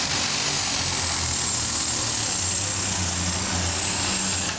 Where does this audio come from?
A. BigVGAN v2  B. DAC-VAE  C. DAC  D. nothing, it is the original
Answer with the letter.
D